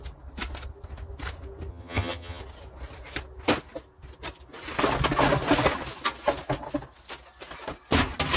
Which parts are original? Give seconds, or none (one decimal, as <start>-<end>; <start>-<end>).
0.0-1.7; 2.4-8.4